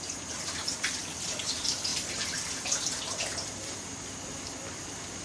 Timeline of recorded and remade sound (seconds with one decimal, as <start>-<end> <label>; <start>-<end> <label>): 0.0-5.2 recorded

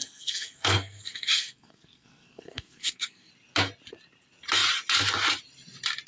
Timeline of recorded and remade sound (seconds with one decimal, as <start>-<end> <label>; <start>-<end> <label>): 0.0-3.3 remade; 3.3-6.1 recorded

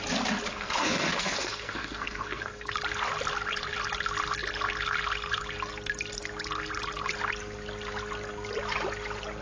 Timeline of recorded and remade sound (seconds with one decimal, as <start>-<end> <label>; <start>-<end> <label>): 0.0-0.5 recorded; 0.5-2.7 remade; 2.7-9.4 recorded

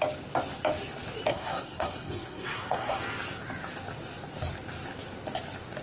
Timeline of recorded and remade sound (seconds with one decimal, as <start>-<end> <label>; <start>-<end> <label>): 0.0-1.3 recorded; 1.3-3.0 remade; 3.0-5.8 recorded

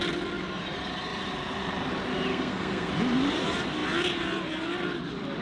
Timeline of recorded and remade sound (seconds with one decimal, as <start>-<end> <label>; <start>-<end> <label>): 0.0-2.3 recorded; 2.3-2.9 remade; 2.9-5.4 recorded